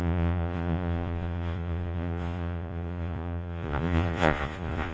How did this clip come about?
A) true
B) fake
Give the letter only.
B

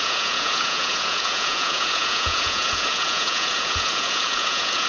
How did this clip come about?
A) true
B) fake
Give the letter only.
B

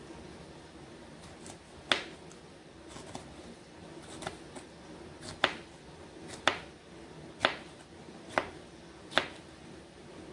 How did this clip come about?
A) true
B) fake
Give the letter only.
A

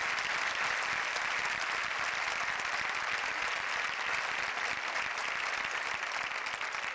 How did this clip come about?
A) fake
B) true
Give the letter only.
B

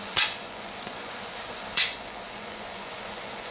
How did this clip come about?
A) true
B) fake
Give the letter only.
B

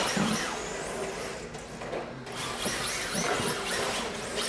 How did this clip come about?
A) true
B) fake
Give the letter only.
A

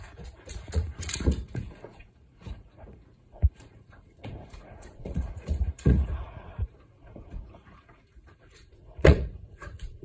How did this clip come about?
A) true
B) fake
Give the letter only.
B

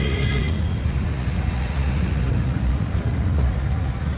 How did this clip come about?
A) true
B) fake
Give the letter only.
B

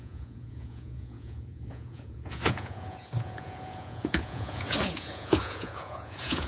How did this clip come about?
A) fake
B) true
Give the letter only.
A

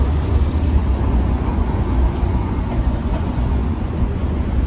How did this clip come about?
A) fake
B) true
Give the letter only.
A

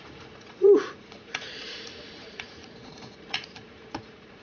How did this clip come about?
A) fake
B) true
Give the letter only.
A